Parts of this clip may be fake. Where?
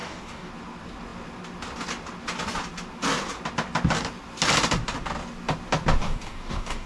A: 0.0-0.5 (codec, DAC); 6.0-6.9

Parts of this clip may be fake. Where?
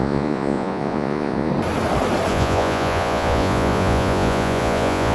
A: 0.0-1.5 (vocoder, Vocos); 2.3-5.1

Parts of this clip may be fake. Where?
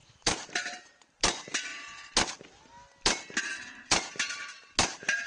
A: 0.0-1.7 (vocoder, BigVGAN v2); 3.4-5.3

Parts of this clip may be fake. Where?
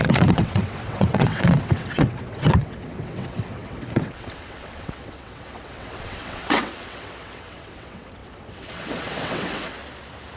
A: 0.0-9.8 (vocoder, WaveNeXt)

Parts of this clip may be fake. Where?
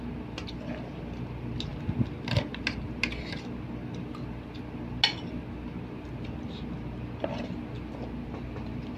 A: none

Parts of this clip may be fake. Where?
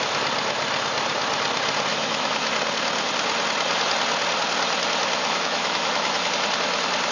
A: 1.9-2.5 (autoencoder, DAC-VAE); 5.2-6.3